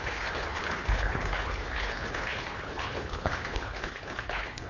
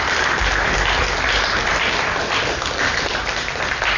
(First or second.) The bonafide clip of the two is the second